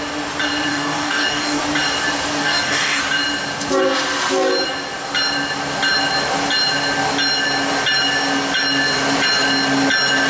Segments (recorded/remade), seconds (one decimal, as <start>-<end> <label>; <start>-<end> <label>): 0.0-0.7 recorded; 0.7-1.6 remade; 1.6-2.4 recorded; 2.4-3.0 remade; 3.0-10.3 recorded